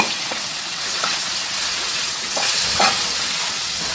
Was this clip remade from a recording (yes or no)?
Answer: yes